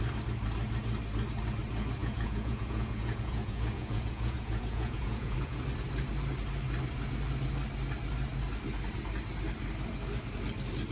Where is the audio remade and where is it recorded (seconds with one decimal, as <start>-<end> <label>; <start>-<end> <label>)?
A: 0.0-2.0 recorded; 2.0-5.6 remade; 5.6-10.9 recorded